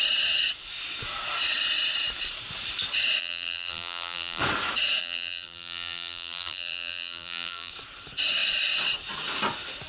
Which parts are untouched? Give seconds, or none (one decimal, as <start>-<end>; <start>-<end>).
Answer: 0.0-3.2; 4.4-5.0; 7.7-9.9